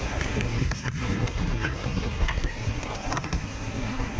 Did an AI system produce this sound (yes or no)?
yes